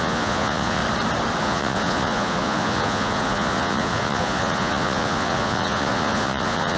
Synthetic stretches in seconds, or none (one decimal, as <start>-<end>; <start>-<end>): 0.0-0.8; 1.4-6.8